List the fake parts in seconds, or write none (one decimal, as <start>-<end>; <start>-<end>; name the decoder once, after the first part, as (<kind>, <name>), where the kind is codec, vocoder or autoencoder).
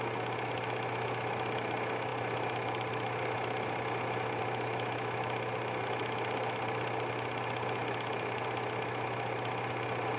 none